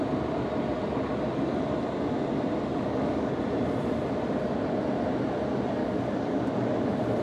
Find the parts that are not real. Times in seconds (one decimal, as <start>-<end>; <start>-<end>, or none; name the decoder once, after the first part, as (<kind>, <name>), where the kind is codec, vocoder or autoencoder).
2.7-3.4 (codec, DAC); 5.8-6.8